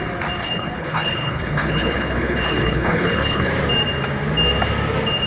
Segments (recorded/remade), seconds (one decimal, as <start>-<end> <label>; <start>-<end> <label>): 0.0-0.4 recorded; 0.4-3.5 remade; 3.5-5.3 recorded

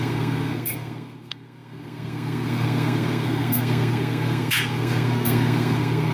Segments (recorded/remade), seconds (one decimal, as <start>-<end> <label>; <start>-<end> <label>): 0.0-6.1 remade

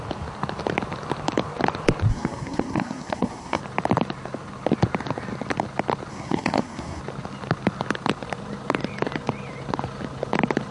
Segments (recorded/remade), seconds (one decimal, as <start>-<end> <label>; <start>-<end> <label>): 0.0-2.1 recorded; 2.1-3.6 remade; 3.6-6.1 recorded; 6.1-7.0 remade; 7.0-10.7 recorded

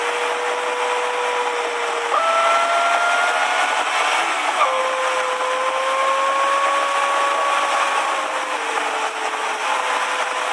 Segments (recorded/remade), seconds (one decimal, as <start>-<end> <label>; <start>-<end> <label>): 0.0-4.2 recorded; 4.2-4.8 remade; 4.8-10.5 recorded

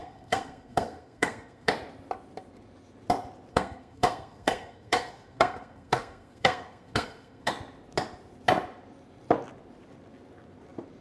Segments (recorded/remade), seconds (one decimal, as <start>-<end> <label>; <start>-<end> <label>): 0.0-1.7 remade; 1.7-3.5 recorded; 3.5-7.5 remade; 7.5-11.0 recorded